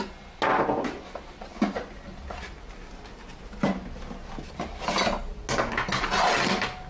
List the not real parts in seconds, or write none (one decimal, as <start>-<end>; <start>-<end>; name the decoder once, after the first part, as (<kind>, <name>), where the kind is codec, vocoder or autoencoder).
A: none